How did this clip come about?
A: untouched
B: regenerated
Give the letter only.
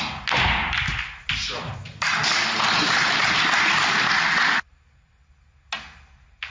A